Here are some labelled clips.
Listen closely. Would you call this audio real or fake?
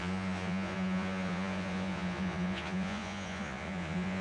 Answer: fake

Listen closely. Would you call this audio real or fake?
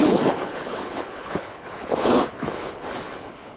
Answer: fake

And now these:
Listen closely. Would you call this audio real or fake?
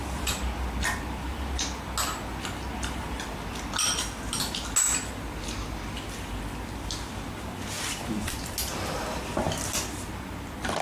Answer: real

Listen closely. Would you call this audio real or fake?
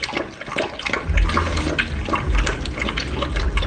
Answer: real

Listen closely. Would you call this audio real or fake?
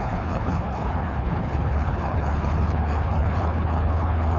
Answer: fake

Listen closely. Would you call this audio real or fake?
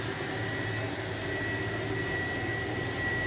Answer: real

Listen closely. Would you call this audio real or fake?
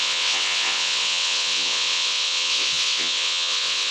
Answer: fake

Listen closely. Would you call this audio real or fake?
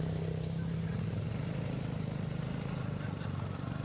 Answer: real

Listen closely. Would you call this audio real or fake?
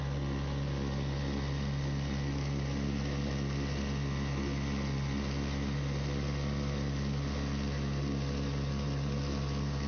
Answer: real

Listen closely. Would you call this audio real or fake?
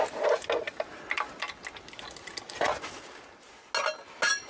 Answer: real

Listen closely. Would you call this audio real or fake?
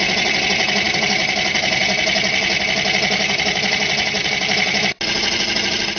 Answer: real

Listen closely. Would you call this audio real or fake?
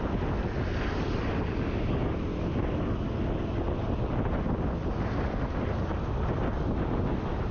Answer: real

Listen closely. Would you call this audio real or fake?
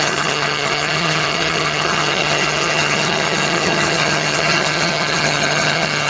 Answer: fake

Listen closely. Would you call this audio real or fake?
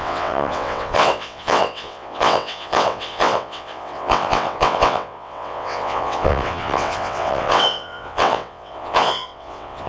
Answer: fake